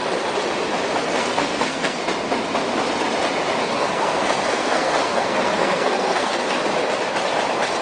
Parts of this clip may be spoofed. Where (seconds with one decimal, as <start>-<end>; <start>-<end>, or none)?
1.0-2.0; 3.6-6.6